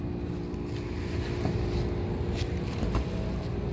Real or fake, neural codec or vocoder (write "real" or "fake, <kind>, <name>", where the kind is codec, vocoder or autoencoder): real